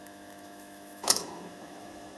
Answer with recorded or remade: remade